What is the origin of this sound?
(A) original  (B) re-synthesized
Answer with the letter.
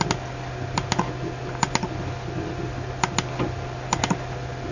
A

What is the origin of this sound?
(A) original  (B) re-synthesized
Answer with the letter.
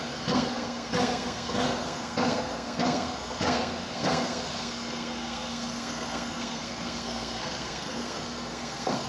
B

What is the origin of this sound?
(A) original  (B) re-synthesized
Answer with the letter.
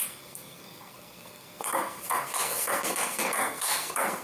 B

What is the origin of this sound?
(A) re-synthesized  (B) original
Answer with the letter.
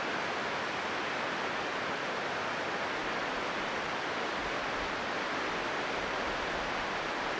B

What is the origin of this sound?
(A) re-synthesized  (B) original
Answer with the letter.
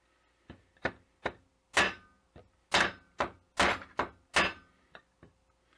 B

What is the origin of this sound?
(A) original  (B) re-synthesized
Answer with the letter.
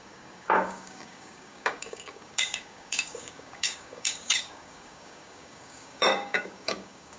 B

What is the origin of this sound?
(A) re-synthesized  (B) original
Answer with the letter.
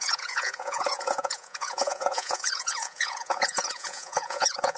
A